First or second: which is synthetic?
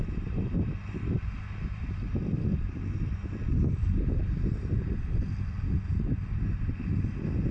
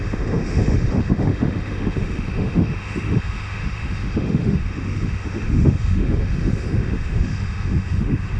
second